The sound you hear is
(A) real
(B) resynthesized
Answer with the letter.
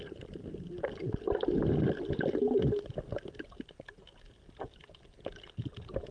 A